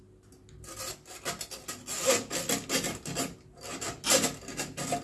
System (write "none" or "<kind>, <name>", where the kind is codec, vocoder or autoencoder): none